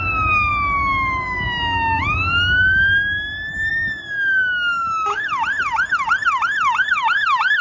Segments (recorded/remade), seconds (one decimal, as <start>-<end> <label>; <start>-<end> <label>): 0.0-7.6 recorded